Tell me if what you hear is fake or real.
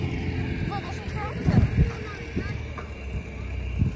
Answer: real